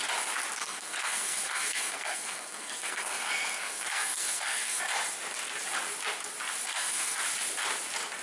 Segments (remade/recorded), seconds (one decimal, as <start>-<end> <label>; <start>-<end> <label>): 0.0-0.6 recorded; 0.6-4.8 remade; 4.8-6.7 recorded; 6.7-7.2 remade; 7.2-8.2 recorded